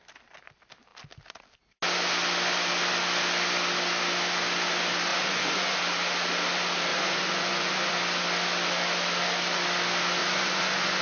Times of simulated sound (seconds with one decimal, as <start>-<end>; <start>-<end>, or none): 5.1-5.8; 6.9-7.9; 10.2-11.0